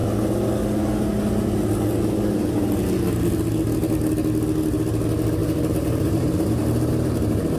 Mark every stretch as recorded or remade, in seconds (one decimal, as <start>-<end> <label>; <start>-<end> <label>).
0.0-5.4 recorded; 5.4-7.6 remade